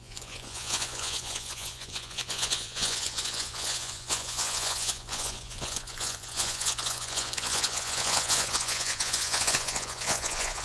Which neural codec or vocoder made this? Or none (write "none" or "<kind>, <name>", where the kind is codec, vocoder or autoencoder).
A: vocoder, Vocos